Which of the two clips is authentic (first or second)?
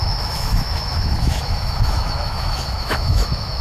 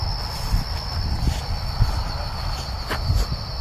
second